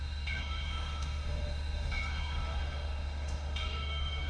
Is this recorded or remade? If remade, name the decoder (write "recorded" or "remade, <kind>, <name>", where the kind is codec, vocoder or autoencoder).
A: remade, autoencoder, DAC-VAE